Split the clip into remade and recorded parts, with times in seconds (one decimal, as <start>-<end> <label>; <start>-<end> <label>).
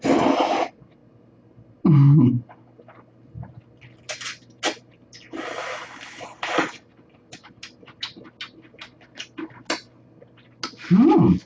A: 0.0-11.5 recorded